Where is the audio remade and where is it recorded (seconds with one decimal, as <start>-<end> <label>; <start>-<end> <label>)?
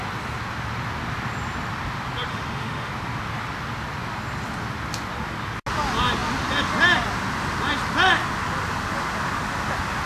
0.0-2.3 recorded; 2.3-2.9 remade; 2.9-10.1 recorded